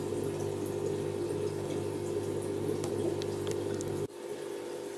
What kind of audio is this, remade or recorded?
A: recorded